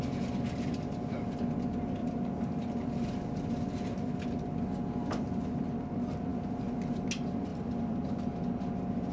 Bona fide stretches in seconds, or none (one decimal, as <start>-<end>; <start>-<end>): 0.0-2.0; 3.1-7.5; 8.4-9.1